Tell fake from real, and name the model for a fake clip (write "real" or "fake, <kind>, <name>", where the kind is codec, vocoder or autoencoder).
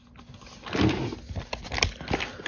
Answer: real